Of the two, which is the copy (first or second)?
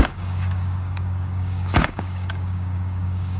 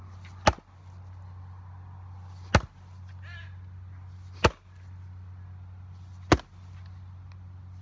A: first